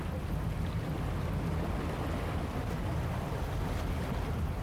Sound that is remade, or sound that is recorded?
recorded